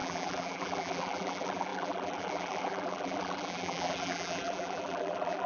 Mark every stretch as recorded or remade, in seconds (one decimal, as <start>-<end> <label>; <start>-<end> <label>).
0.0-5.5 remade